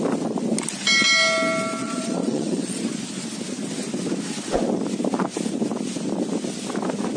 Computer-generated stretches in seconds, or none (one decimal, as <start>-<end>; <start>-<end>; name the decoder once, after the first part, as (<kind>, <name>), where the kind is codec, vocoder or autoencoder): 1.8-2.8 (vocoder, Vocos)